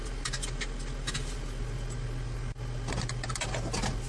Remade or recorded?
recorded